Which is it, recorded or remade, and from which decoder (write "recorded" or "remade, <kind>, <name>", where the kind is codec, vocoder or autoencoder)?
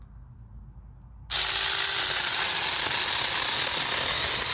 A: recorded